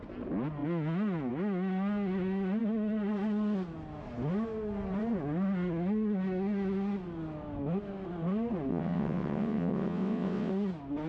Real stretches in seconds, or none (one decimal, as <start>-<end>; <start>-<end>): 0.0-8.7; 10.5-11.1